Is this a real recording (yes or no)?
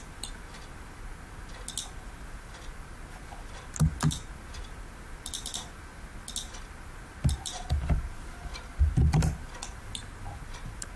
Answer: yes